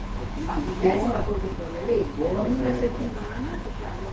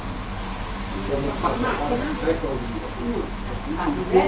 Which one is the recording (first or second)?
second